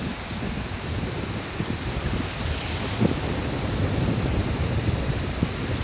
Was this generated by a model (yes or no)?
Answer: no